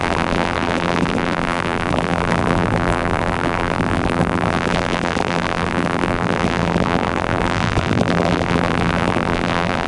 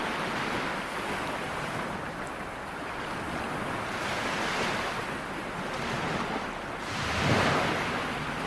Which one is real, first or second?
second